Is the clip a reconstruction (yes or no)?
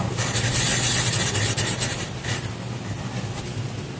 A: no